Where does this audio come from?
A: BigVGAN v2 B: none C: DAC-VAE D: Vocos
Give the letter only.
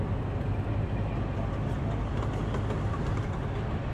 B